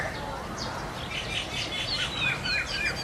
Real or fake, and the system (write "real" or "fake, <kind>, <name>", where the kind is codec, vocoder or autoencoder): real